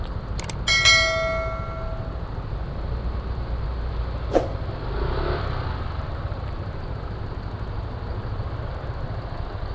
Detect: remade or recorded recorded